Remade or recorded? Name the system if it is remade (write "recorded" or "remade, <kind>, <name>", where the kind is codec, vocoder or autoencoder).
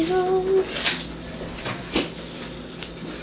recorded